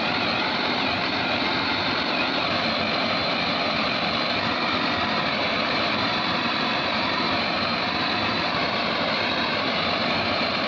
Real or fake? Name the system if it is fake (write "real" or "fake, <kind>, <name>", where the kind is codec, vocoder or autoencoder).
fake, vocoder, BigVGAN v2